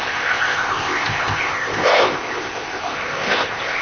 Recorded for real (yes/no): no